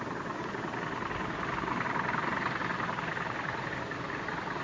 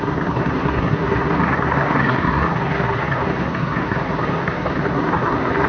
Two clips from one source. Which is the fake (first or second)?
second